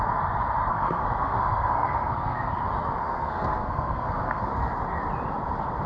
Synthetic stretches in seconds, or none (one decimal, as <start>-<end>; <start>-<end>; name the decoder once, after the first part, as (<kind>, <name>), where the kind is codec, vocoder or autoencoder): 0.7-2.6 (codec, SNAC); 3.0-4.5